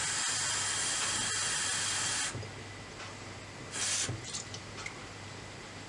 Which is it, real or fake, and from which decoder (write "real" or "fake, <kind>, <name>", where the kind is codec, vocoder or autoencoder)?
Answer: real